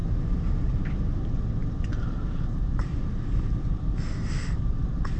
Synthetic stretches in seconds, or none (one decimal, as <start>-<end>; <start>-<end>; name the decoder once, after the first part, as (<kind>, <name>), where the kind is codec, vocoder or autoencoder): 0.0-1.2 (vocoder, BigVGAN v2); 1.6-4.7